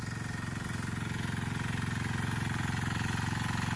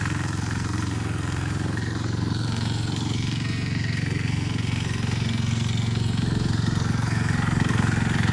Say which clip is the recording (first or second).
first